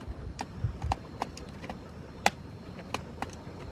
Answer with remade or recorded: remade